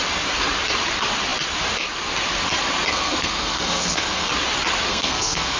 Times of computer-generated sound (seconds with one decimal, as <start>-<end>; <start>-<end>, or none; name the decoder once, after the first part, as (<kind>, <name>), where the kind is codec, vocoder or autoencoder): 2.9-4.3 (codec, SNAC); 4.9-5.6